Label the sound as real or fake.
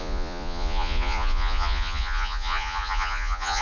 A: fake